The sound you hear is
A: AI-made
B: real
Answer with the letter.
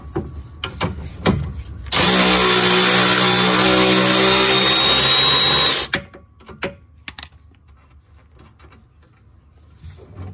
B